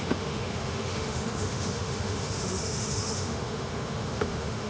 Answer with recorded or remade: remade